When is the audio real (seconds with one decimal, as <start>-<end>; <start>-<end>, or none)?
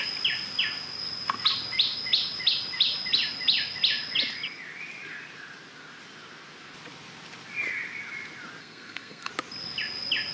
0.0-8.6; 9.3-10.3